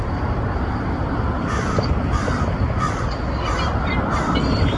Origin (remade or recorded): remade